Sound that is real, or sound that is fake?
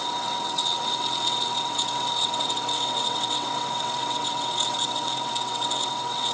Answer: fake